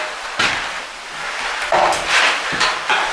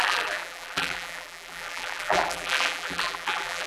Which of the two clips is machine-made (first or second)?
second